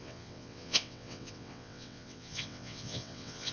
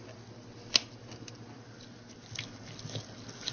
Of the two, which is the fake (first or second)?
first